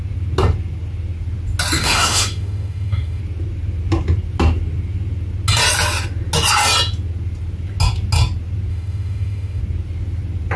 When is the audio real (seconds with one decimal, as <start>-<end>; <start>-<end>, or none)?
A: 0.0-1.8; 3.2-8.7; 9.6-10.6